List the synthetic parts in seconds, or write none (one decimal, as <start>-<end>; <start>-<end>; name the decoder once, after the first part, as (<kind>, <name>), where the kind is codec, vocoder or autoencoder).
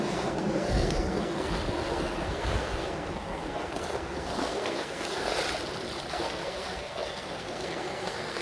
0.0-5.3 (codec, SNAC); 6.1-8.4